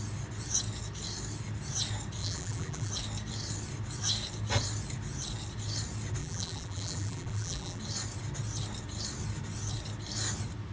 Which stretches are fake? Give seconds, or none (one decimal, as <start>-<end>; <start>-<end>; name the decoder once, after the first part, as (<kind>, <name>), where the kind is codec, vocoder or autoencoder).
2.2-2.9 (vocoder, BigVGAN v2); 6.2-7.8